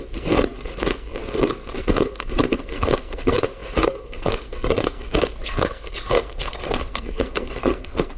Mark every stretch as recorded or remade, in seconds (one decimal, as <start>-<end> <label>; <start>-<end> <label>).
0.0-8.2 remade